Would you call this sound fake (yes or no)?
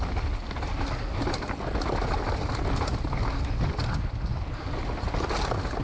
no